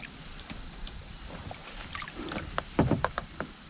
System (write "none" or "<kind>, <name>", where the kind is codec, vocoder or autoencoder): none